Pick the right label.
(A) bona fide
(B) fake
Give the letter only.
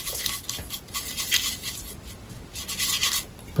A